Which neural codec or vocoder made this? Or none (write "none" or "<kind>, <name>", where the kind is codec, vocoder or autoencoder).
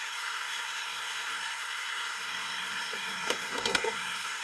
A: codec, SNAC